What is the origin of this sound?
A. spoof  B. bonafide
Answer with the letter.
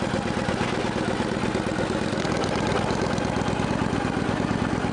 B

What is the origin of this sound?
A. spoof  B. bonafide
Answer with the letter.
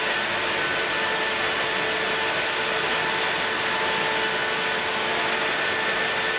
B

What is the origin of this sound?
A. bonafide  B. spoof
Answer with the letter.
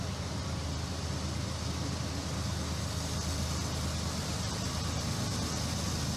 A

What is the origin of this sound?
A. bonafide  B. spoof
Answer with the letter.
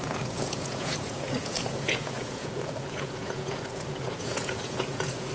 B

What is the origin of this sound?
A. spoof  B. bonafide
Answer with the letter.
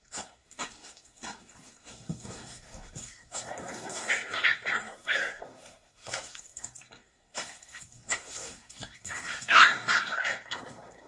A